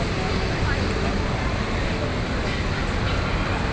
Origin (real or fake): real